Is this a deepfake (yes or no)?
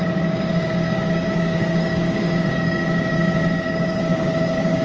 yes